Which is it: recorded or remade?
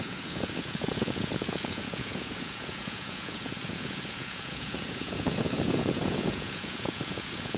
remade